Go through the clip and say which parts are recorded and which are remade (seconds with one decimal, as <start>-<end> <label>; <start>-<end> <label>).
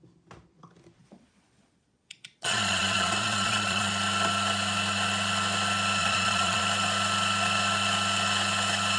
0.0-1.0 recorded; 1.0-3.9 remade; 3.9-6.0 recorded; 6.0-6.6 remade; 6.6-9.0 recorded